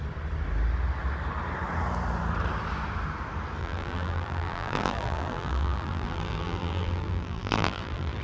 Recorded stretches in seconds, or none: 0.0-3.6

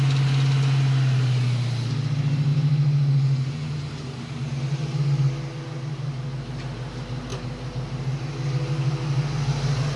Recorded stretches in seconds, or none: 0.0-10.0

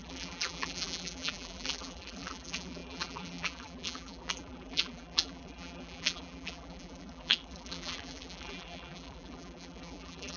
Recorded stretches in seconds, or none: none